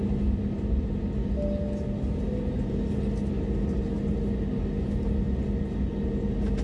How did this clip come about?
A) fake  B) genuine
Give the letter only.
B